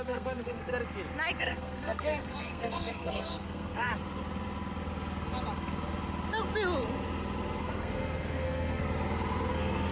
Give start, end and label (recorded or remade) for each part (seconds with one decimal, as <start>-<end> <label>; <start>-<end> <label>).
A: 0.0-0.7 remade; 0.7-1.4 recorded; 1.4-3.9 remade; 3.9-7.6 recorded; 7.6-8.8 remade; 8.8-9.5 recorded; 9.5-9.9 remade